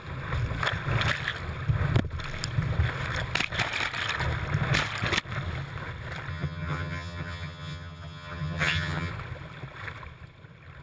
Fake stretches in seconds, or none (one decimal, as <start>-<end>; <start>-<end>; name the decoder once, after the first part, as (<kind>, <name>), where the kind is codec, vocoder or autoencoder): 6.3-9.1 (vocoder, HiFi-GAN)